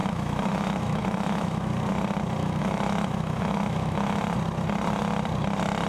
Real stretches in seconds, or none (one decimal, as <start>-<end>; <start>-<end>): 1.7-2.4; 4.2-5.9